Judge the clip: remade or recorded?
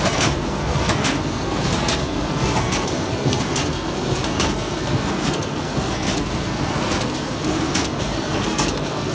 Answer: remade